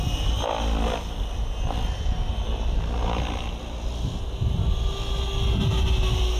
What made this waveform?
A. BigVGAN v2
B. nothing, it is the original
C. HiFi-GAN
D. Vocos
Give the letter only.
B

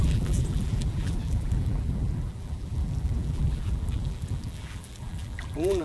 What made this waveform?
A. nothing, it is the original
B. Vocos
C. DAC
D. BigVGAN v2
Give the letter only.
D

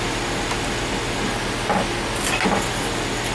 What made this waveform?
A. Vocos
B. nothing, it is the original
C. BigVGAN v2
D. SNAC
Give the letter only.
B